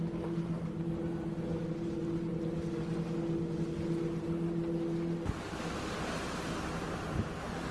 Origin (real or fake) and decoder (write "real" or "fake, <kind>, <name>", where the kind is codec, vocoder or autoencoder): real